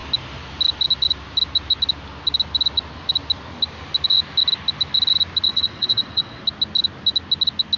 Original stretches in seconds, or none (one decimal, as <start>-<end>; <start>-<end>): 0.0-5.5; 6.4-7.8